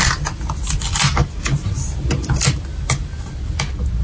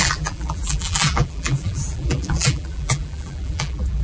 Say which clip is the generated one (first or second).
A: second